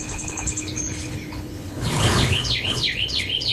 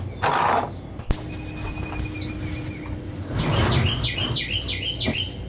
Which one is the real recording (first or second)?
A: second